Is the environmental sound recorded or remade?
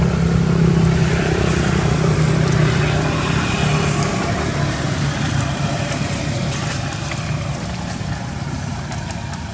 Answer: remade